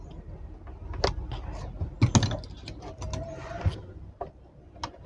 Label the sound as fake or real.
real